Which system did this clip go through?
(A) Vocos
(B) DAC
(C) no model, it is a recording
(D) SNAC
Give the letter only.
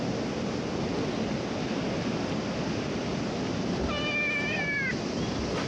C